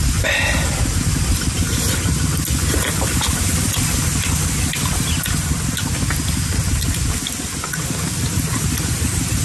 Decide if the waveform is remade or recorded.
recorded